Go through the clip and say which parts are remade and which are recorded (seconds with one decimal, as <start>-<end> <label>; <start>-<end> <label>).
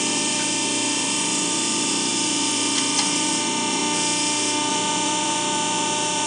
0.0-3.8 remade; 3.8-4.7 recorded; 4.7-6.3 remade